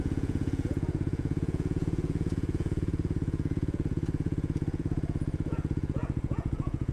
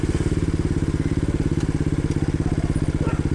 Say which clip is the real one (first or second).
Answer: second